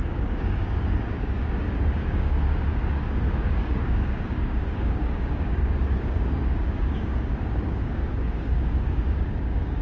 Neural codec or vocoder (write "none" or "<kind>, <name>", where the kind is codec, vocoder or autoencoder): codec, DAC